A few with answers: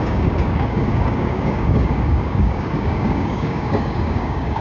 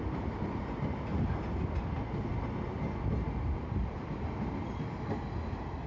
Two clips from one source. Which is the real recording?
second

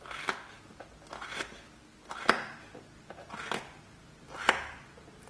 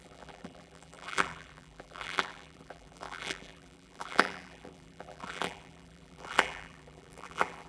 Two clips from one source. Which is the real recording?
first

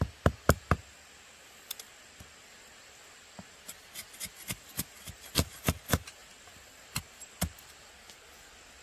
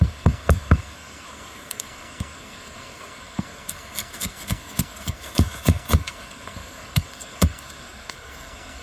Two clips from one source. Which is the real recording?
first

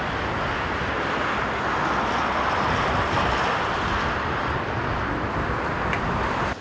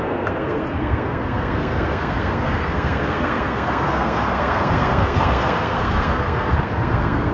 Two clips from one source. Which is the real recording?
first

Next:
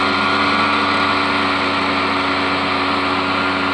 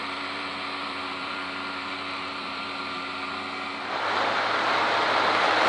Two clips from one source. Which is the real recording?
first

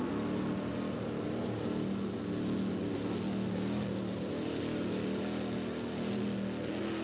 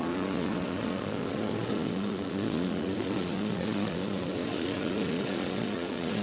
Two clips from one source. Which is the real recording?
first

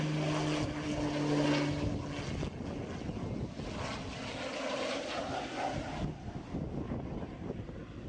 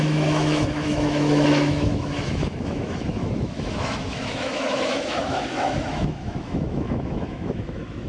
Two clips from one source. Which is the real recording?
first